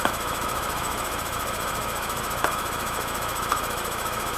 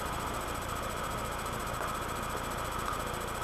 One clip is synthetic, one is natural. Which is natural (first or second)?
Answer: second